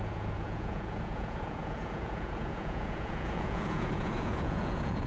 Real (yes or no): no